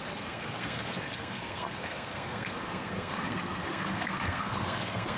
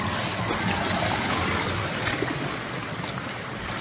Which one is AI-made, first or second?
first